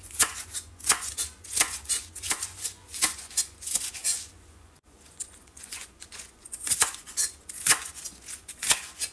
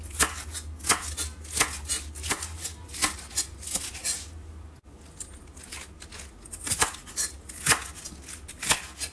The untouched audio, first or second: second